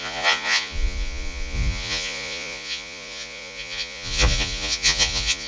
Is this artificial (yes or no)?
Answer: yes